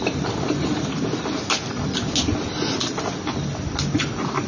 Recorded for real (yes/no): yes